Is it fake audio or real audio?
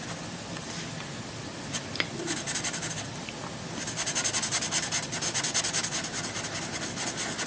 real